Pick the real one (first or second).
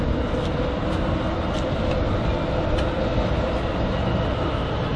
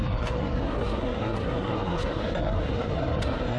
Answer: first